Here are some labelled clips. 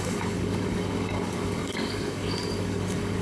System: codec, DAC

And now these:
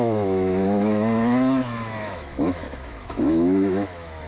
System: autoencoder, DAC-VAE